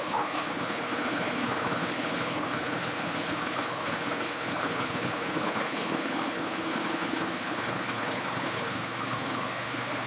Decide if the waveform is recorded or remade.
remade